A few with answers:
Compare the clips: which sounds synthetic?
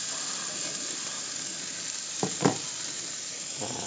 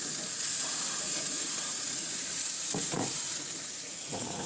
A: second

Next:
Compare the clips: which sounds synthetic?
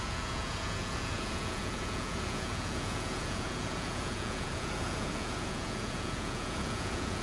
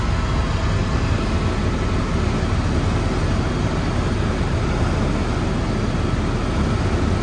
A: first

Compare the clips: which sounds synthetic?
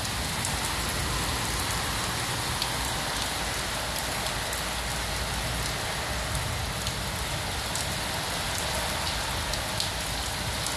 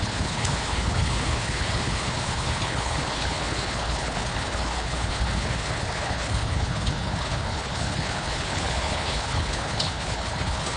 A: second